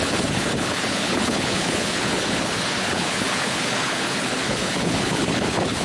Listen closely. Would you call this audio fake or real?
fake